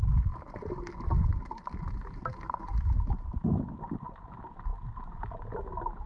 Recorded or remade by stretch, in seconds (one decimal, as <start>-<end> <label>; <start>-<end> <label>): 0.0-6.1 recorded